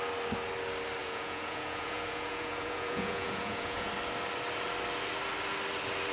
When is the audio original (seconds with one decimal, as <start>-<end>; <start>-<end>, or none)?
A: 0.0-1.0; 3.9-6.1